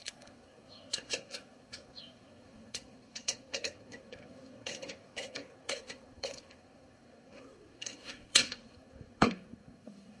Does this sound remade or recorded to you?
remade